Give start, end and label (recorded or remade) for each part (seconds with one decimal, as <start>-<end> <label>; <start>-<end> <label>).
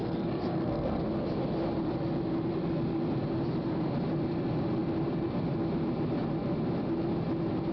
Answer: 0.0-1.0 remade; 1.0-7.7 recorded